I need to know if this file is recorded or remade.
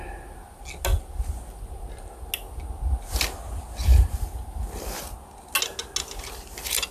recorded